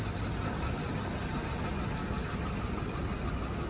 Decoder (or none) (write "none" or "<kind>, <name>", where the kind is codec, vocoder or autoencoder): none